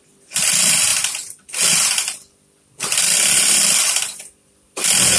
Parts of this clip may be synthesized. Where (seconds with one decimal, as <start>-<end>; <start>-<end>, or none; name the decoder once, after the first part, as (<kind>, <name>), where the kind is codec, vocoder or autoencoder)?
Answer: none